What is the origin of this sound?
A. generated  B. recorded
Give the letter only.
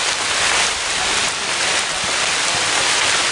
A